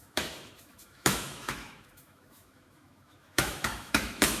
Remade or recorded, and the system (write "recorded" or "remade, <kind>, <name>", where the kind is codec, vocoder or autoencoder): remade, autoencoder, DAC-VAE